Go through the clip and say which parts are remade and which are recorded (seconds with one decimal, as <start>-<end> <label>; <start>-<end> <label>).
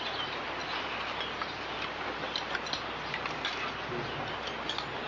0.0-5.1 recorded